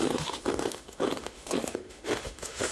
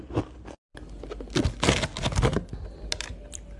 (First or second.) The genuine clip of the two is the second